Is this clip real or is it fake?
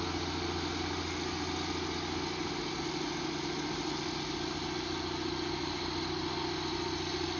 real